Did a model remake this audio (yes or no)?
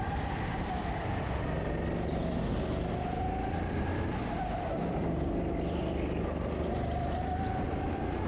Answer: no